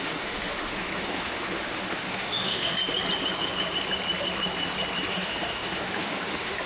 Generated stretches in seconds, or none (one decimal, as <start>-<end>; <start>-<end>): 0.0-2.8; 5.1-6.7

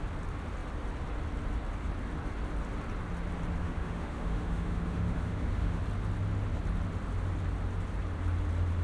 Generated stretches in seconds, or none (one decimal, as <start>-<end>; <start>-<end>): 3.6-5.8

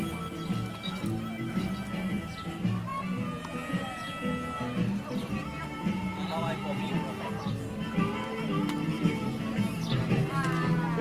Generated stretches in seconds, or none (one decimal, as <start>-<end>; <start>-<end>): none

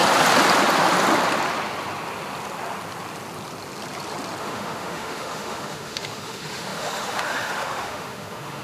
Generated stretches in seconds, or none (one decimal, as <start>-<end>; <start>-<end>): 4.4-8.6

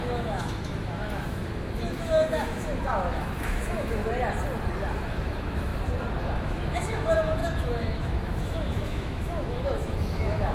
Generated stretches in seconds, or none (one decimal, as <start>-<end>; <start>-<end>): 0.0-4.0; 4.9-5.7; 6.2-10.5

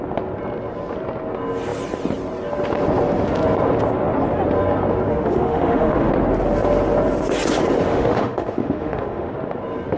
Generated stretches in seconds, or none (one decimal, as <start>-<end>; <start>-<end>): 5.1-6.1; 7.9-9.3

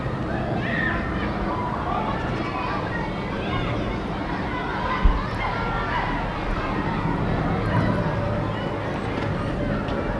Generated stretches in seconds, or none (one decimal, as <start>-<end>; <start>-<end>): none

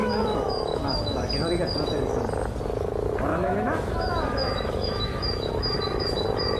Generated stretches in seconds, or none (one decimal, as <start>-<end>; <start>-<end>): 0.0-1.3; 3.3-6.6